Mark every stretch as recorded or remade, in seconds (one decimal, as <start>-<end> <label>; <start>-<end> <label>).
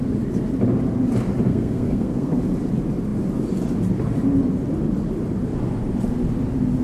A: 0.0-1.5 recorded; 1.5-2.4 remade; 2.4-6.8 recorded